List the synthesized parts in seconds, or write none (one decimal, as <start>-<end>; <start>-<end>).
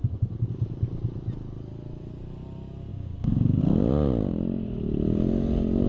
0.0-0.5; 2.9-3.6